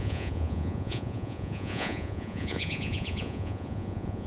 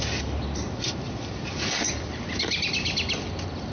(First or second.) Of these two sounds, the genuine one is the second